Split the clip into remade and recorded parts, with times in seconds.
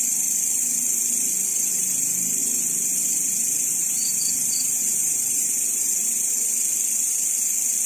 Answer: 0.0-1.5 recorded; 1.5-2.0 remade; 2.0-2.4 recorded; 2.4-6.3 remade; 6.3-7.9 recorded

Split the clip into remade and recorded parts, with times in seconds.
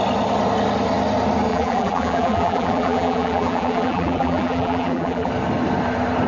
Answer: 0.0-1.5 recorded; 1.5-5.3 remade; 5.3-6.3 recorded